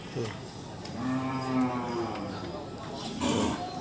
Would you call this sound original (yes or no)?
yes